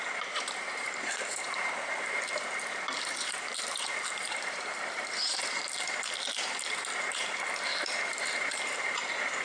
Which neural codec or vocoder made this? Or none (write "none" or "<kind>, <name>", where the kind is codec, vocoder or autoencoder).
vocoder, BigVGAN v2